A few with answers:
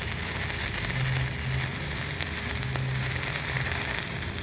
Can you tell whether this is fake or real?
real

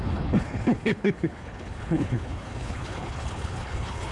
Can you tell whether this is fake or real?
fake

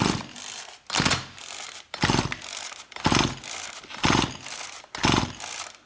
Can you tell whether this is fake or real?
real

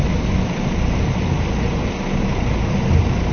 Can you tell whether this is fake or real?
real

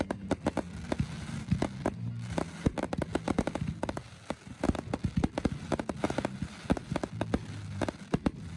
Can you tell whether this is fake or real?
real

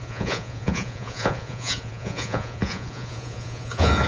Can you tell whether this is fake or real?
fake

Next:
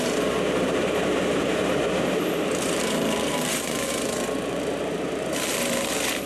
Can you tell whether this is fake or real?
fake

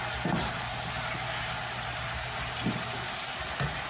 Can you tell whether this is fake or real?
real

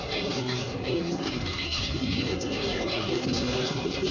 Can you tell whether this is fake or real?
fake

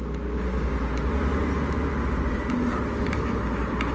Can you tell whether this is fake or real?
real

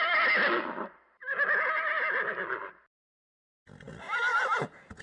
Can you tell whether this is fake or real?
real